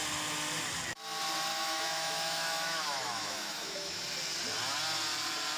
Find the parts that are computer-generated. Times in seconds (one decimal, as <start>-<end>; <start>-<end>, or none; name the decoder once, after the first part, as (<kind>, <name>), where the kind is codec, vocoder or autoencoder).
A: 1.5-4.0 (autoencoder, DAC-VAE)